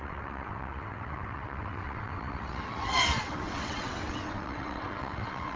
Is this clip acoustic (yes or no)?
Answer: no